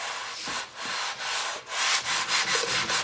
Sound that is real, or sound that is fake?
real